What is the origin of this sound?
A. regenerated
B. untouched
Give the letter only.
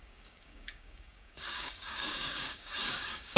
A